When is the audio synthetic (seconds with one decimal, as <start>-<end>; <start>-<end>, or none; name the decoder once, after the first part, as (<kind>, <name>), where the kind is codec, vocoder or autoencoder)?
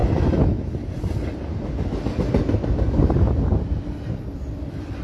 none